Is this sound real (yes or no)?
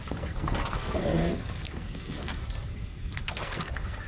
no